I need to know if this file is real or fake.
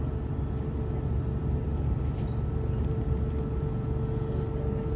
real